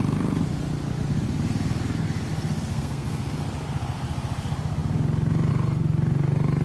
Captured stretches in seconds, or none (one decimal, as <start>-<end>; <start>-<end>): 0.0-2.7; 3.4-6.6